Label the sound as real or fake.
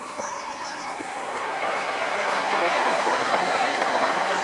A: fake